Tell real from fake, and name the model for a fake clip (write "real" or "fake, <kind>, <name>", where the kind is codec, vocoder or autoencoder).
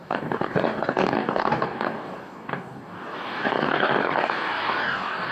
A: fake, codec, DAC